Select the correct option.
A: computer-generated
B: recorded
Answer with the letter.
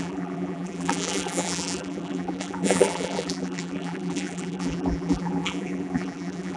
A